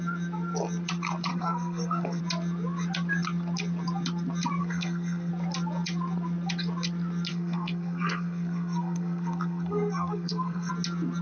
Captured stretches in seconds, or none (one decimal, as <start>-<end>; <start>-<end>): 0.0-1.3; 2.2-4.6; 5.3-7.3; 10.7-11.2